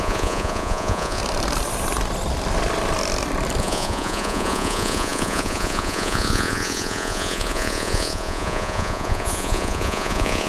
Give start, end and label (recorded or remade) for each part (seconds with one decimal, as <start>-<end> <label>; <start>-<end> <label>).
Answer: 0.0-1.2 remade; 1.2-3.6 recorded; 3.6-10.5 remade